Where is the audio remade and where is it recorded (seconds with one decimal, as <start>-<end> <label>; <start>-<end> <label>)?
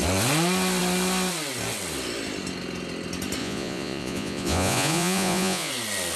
0.0-3.4 recorded; 3.4-5.7 remade; 5.7-6.2 recorded